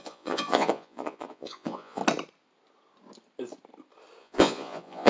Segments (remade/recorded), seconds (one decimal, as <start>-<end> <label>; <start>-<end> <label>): 0.0-2.0 remade; 2.0-4.2 recorded; 4.2-5.1 remade